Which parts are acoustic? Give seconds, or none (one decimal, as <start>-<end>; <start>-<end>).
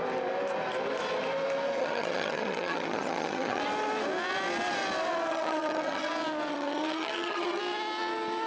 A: 0.0-1.8; 3.6-5.3; 6.1-6.5; 7.6-8.5